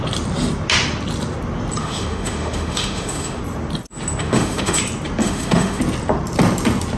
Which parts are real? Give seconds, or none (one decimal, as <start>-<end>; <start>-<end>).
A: 0.0-1.8; 3.4-4.2; 4.8-5.2; 5.8-7.0